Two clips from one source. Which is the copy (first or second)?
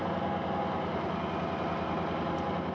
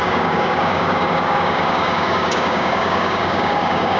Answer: second